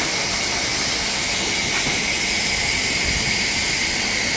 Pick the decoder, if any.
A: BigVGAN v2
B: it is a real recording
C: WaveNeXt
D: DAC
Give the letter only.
B